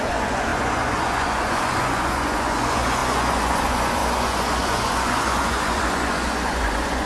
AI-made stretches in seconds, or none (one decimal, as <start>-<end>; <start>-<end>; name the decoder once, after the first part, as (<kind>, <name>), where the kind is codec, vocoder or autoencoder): 0.0-7.1 (vocoder, Vocos)